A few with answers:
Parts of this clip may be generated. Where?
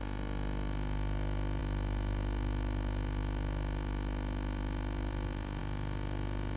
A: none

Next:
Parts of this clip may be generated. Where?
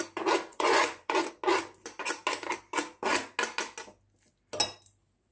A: 0.5-1.3 (vocoder, Vocos)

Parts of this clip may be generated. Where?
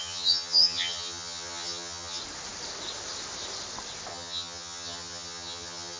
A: 0.0-2.2 (vocoder, HiFi-GAN); 4.1-6.0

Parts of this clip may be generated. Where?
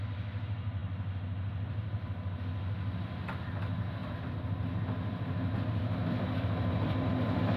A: none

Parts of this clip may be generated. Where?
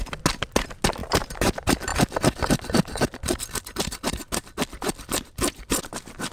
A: 1.0-1.5 (vocoder, BigVGAN v2)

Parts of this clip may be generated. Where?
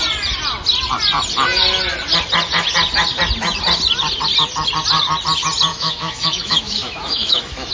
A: 5.7-7.7 (autoencoder, DAC-VAE)